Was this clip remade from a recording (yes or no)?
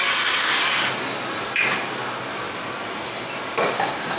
no